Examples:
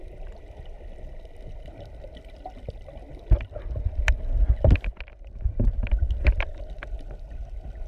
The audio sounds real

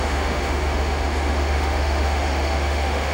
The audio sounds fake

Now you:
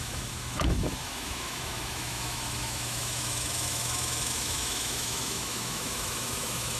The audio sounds fake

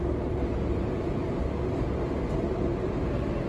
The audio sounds real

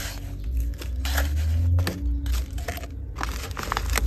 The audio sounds real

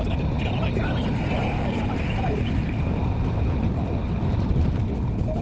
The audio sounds real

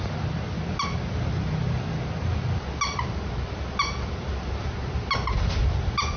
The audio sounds real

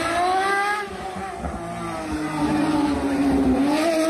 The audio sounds real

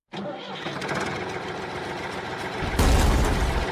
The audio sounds real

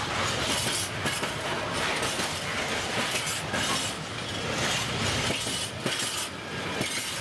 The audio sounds real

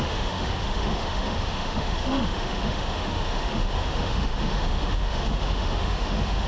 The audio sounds fake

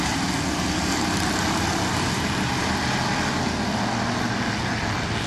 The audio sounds real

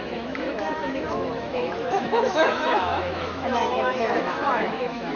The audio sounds fake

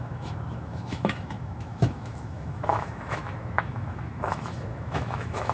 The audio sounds fake